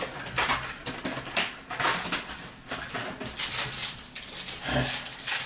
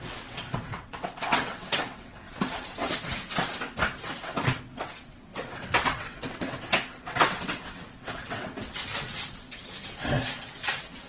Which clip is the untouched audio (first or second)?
first